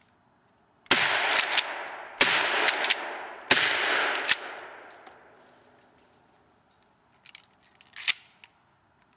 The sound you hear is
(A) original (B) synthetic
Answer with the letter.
A